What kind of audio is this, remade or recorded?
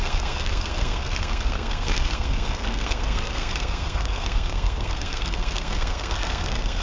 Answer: remade